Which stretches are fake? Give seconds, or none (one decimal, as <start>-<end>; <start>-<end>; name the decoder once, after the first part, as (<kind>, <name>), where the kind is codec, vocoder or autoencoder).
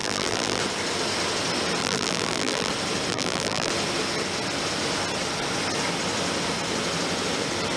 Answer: 0.0-0.6 (vocoder, BigVGAN v2); 1.8-2.7; 3.1-3.7